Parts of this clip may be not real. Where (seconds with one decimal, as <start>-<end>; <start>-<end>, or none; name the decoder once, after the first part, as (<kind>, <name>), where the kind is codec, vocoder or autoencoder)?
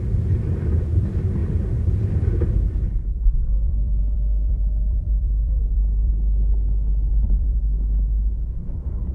1.4-6.1 (vocoder, BigVGAN v2); 6.9-7.6